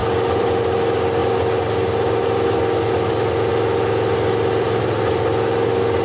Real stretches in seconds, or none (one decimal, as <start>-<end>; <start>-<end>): 0.0-6.0